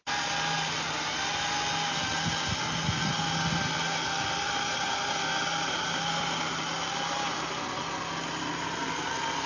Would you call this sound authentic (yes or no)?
yes